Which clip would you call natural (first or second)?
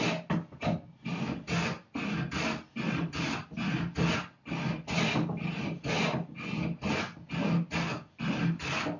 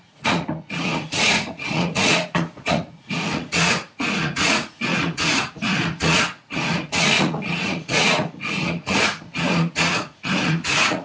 first